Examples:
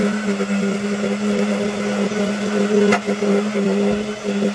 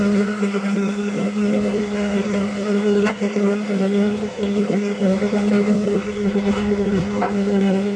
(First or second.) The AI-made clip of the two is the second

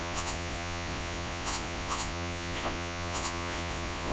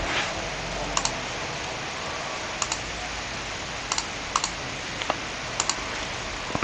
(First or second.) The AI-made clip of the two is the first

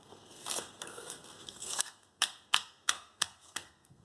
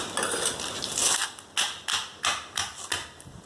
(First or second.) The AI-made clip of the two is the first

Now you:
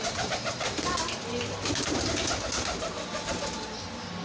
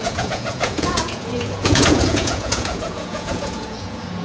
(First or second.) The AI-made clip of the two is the second